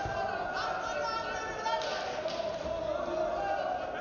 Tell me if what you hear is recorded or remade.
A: recorded